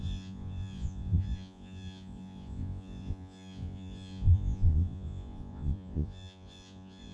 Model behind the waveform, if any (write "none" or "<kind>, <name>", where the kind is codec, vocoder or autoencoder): vocoder, Vocos